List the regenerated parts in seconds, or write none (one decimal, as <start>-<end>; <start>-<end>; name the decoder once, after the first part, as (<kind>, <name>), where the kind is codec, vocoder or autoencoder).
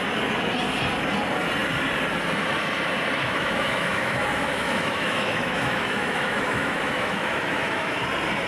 3.2-8.0 (autoencoder, DAC-VAE)